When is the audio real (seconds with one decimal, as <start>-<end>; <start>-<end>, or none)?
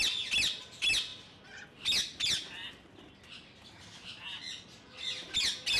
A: 0.0-5.8